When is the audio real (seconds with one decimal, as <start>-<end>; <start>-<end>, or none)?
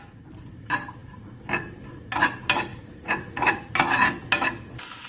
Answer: 0.0-2.7; 3.7-5.1